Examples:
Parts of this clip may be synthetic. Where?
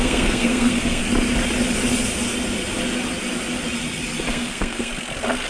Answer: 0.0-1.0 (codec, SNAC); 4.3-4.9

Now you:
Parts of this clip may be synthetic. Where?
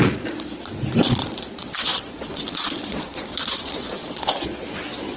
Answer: 0.0-5.2 (vocoder, Vocos)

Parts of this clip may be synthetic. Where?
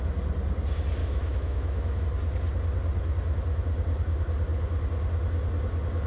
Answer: 1.0-2.0 (autoencoder, DAC-VAE)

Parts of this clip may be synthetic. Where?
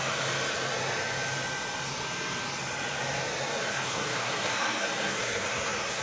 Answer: 3.7-6.0 (codec, SNAC)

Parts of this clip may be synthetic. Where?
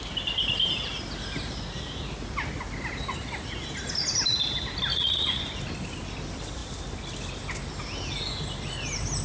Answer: 4.9-5.4 (vocoder, Vocos)